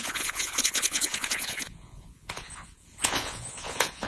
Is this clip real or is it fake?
fake